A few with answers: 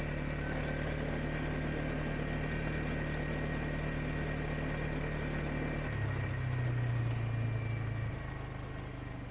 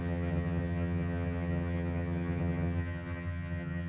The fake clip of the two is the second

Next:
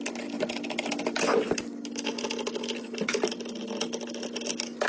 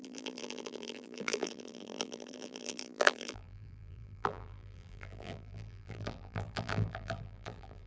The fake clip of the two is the second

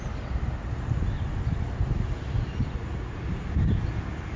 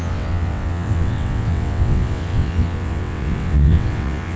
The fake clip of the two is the second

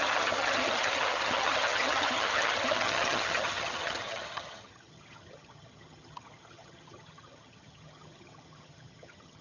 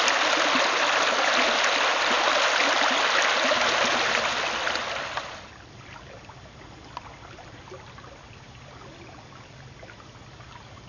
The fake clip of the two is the first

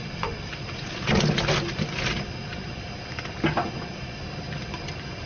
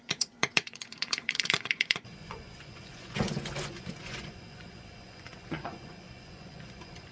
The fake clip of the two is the second